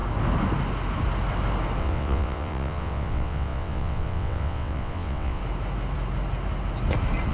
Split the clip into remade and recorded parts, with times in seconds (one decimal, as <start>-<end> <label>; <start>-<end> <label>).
0.0-1.8 recorded; 1.8-5.4 remade; 5.4-7.3 recorded